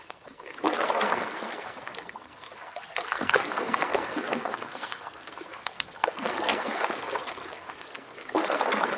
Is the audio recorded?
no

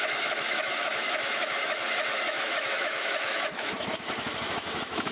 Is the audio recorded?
no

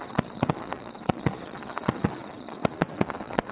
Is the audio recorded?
no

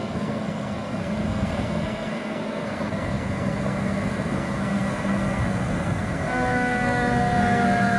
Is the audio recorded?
no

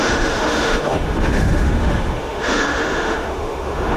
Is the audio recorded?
no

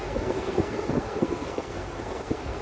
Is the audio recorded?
no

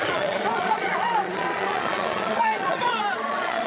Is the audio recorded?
no